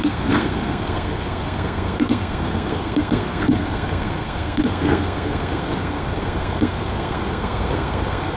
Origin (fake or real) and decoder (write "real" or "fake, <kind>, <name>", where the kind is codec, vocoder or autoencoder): fake, codec, SNAC